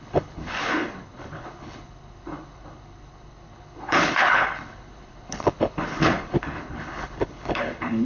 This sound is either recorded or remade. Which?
remade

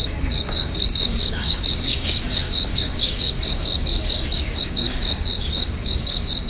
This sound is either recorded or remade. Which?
remade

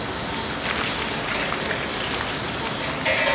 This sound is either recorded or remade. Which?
recorded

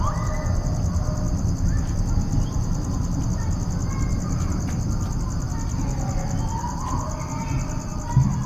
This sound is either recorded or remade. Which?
recorded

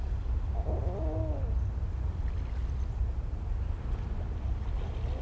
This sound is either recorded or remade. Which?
recorded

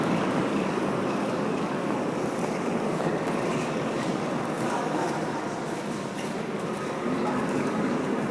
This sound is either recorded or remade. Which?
remade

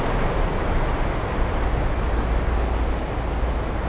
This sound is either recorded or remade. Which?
recorded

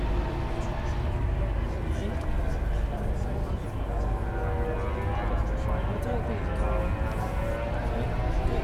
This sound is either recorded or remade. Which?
recorded